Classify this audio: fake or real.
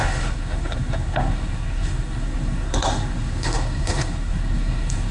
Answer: fake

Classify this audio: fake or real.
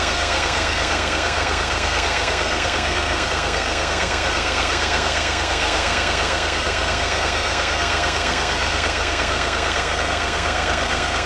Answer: fake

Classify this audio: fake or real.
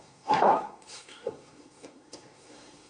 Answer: fake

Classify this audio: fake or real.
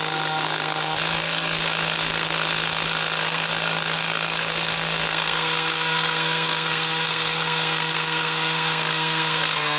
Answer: fake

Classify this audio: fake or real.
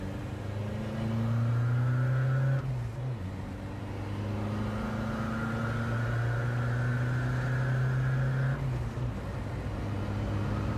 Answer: real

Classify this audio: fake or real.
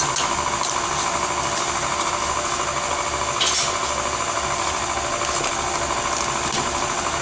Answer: real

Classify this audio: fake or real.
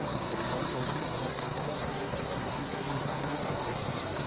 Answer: fake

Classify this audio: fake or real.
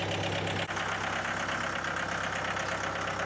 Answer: real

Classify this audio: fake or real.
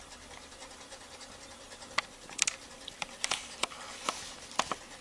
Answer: real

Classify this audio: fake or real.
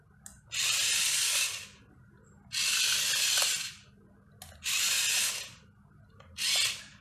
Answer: real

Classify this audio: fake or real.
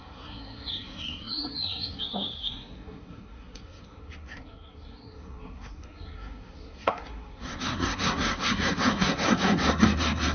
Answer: fake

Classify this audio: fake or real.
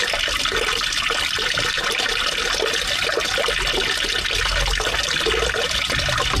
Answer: real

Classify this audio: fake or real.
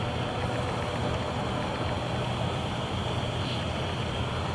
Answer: real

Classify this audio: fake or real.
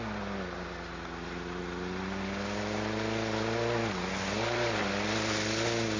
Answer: real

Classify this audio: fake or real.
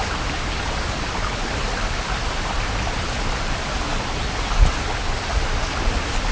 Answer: real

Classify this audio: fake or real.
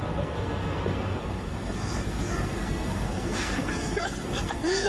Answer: fake